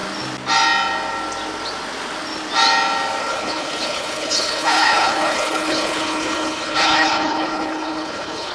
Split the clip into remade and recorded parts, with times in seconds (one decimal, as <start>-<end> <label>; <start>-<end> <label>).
0.0-3.2 recorded; 3.2-8.5 remade